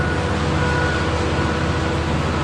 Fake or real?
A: real